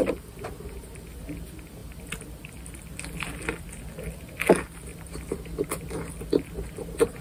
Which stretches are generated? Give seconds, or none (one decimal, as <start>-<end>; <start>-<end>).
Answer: none